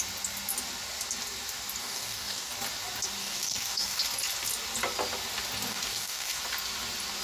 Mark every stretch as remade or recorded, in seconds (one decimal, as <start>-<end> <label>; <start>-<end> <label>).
0.0-1.8 recorded; 1.8-2.5 remade; 2.5-3.2 recorded; 3.2-4.0 remade; 4.0-5.7 recorded; 5.7-6.4 remade; 6.4-7.2 recorded